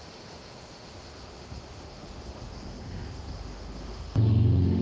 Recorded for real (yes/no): no